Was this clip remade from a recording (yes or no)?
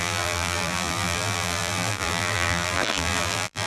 yes